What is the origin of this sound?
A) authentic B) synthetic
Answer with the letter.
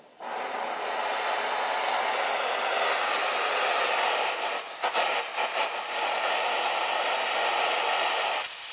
A